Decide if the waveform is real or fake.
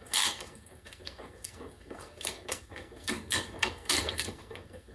fake